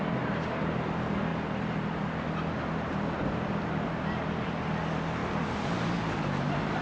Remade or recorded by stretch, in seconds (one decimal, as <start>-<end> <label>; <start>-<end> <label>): 0.0-5.2 recorded; 5.2-6.8 remade